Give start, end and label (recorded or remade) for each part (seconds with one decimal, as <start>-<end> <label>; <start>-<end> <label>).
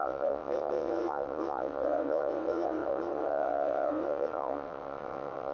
0.0-5.5 remade